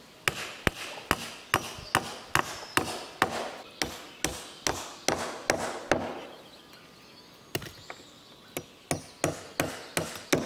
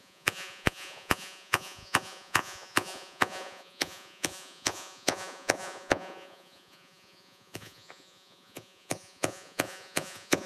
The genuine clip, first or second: first